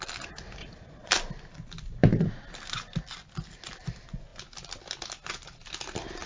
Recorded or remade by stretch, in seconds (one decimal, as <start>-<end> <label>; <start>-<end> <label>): 0.0-0.6 recorded; 0.6-1.1 remade; 1.1-6.3 recorded